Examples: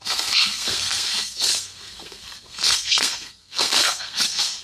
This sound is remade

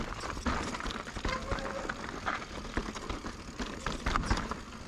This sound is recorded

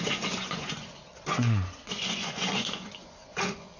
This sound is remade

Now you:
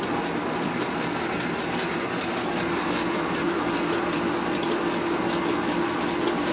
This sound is recorded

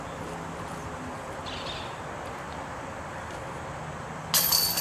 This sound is recorded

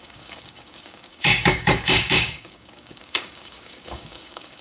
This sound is remade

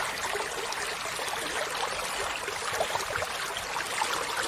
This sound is recorded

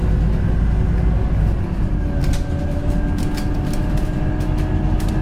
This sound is recorded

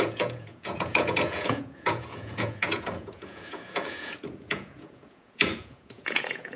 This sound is remade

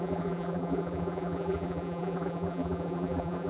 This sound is remade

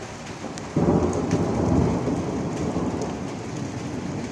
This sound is recorded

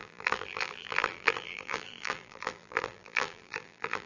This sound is remade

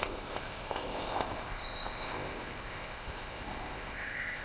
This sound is remade